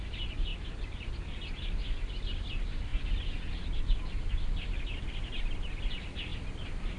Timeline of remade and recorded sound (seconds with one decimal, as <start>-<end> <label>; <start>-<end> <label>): 0.0-7.0 recorded